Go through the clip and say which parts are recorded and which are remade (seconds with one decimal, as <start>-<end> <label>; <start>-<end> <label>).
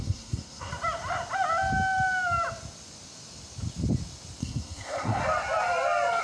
0.0-0.7 remade; 0.7-4.4 recorded; 4.4-5.2 remade; 5.2-6.2 recorded